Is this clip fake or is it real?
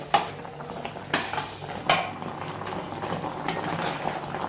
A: real